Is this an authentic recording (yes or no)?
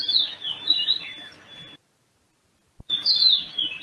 yes